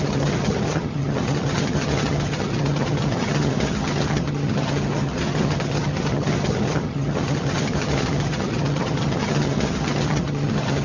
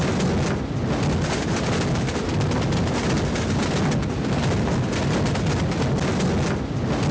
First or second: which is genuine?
second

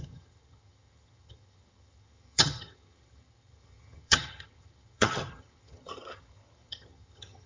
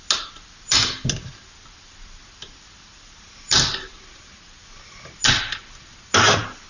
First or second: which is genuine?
second